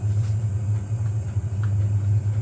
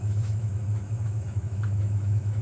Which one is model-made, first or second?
second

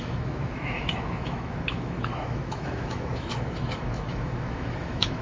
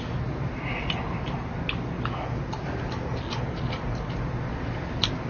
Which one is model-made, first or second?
first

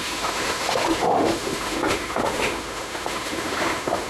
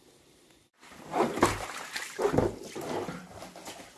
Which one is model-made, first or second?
first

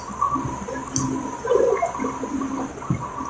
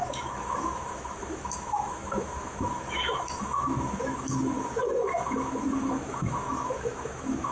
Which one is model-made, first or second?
second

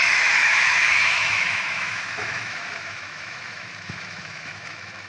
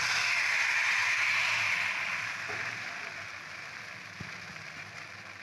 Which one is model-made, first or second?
first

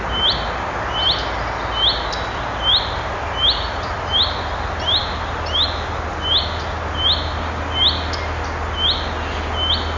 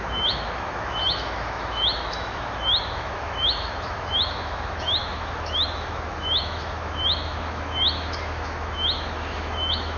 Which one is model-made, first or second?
second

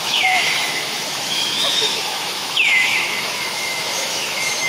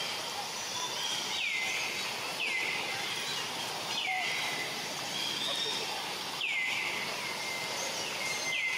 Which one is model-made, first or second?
first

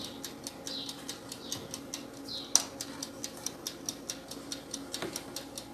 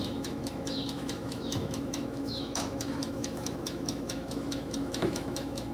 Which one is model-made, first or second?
second